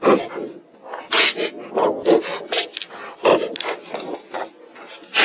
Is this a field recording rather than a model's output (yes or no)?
yes